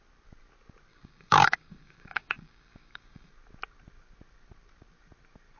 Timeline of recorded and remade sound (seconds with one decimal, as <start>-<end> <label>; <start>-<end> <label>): 0.0-0.9 recorded; 0.9-3.3 remade; 3.3-5.6 recorded